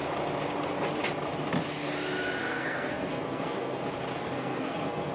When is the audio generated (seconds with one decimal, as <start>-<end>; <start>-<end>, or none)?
2.4-3.8; 4.2-5.1

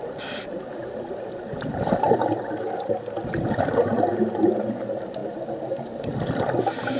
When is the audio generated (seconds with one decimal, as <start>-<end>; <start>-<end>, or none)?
none

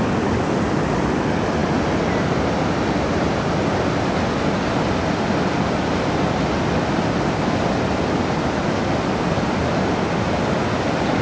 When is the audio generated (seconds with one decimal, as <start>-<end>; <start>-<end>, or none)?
none

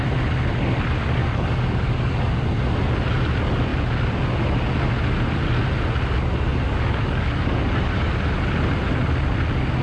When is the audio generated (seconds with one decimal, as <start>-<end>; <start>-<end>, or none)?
1.2-2.3; 6.5-8.1

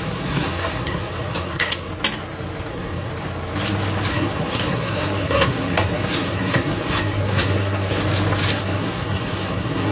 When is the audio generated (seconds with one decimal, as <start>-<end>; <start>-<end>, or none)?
0.0-1.9; 2.7-3.1; 4.1-8.0; 8.5-9.9

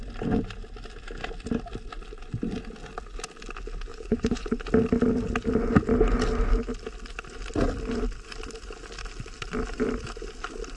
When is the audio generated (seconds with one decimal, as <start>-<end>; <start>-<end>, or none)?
3.9-4.6

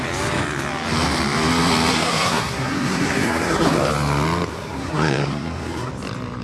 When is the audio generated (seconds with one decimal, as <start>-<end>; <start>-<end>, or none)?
1.9-3.8; 4.5-5.9